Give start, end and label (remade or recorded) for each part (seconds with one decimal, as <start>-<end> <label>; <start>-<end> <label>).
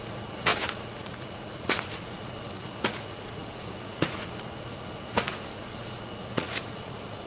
0.0-7.3 remade